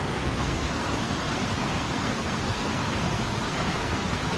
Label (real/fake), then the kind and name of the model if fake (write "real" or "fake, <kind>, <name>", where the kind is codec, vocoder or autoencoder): fake, codec, SNAC